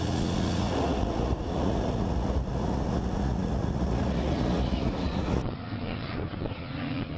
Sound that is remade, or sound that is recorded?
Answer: remade